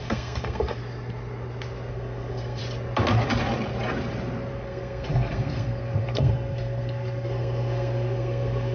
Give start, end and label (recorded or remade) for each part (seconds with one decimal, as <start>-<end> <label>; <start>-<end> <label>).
0.0-0.8 remade; 0.8-1.9 recorded; 1.9-2.6 remade; 2.6-4.5 recorded; 4.5-8.7 remade